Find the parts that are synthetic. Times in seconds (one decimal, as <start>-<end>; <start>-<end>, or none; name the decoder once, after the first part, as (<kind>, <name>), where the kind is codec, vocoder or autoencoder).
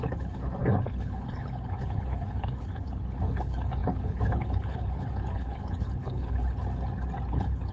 0.0-6.6 (codec, HILCodec); 7.3-7.7